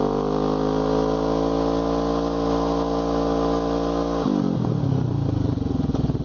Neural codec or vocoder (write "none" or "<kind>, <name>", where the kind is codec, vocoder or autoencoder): none